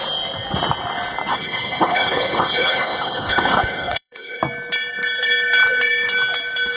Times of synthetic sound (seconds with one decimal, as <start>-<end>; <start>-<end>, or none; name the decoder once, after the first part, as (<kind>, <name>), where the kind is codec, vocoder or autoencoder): 1.3-4.4 (codec, HILCodec)